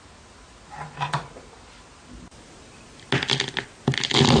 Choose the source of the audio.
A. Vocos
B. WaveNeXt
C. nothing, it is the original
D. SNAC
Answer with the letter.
C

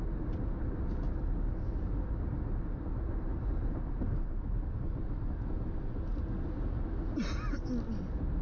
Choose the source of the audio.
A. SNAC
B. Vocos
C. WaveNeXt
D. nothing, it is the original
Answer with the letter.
D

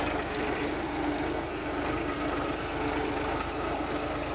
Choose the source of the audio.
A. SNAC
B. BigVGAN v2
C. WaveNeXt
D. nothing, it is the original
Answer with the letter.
D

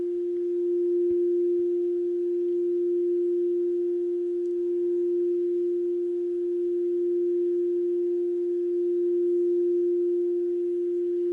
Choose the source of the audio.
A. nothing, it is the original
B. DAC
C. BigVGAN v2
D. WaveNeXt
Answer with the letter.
A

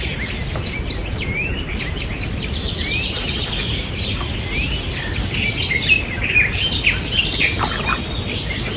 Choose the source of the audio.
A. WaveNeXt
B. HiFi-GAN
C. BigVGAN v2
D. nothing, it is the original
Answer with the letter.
D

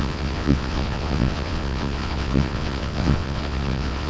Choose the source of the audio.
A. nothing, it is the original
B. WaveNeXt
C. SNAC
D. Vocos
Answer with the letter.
B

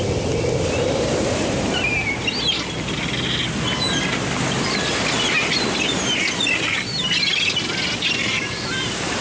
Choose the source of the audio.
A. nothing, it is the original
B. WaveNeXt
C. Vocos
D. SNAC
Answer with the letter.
A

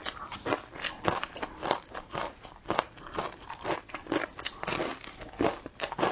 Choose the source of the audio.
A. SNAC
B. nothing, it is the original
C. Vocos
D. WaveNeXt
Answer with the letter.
B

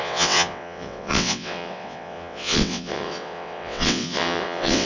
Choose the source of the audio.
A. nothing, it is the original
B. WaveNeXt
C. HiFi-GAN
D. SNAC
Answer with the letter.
B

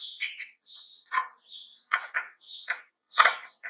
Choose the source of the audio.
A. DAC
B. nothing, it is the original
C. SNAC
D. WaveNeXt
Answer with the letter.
D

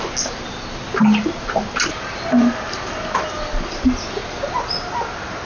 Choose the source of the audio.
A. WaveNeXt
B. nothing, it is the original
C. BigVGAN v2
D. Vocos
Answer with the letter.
B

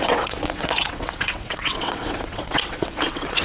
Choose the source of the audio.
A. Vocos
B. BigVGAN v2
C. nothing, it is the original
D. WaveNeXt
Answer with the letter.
D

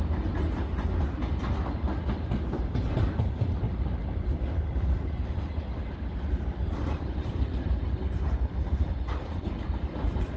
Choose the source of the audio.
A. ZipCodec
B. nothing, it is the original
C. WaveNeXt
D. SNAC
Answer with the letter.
B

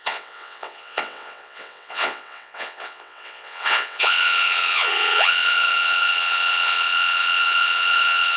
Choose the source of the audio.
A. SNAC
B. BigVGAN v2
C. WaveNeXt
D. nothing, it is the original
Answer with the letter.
C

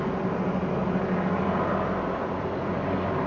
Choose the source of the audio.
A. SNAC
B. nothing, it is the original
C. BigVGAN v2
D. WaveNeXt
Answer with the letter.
B